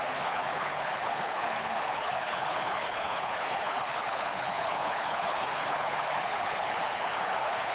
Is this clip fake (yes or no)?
yes